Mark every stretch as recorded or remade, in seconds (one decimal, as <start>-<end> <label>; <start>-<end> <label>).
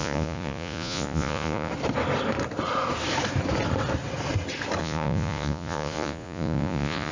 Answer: 0.0-1.7 remade; 1.7-4.8 recorded; 4.8-7.1 remade